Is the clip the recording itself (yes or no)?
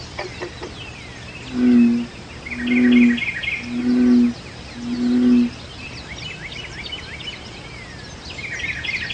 yes